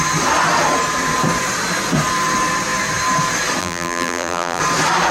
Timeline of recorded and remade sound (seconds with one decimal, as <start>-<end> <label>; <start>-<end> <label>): 0.0-3.6 recorded; 3.6-4.6 remade; 4.6-5.1 recorded